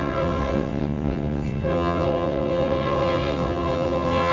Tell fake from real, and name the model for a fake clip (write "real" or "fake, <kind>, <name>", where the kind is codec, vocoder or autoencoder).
fake, vocoder, WaveNeXt